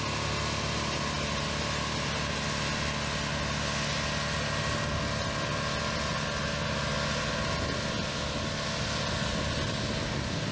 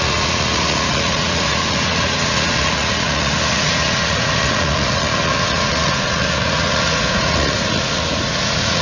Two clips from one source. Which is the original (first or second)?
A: first